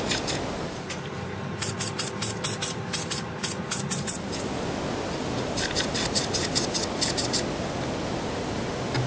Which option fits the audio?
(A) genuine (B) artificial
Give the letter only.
A